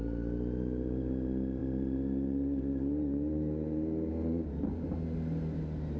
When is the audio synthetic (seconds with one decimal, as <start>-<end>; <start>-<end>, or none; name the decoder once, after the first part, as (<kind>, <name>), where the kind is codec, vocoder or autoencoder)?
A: none